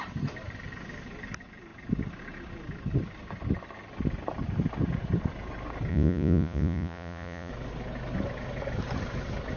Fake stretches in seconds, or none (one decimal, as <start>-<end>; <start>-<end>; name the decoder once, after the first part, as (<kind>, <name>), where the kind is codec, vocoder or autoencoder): 5.9-7.5 (vocoder, Vocos)